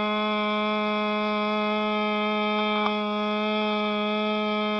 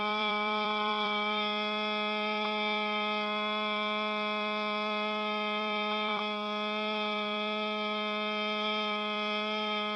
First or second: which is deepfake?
second